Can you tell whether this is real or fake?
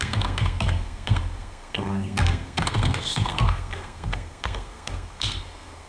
fake